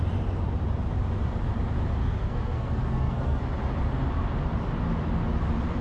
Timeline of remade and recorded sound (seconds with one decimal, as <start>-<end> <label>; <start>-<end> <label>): 0.0-2.0 recorded; 2.0-3.4 remade; 3.4-5.8 recorded